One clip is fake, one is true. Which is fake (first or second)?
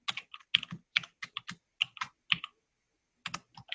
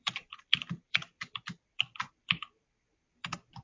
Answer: second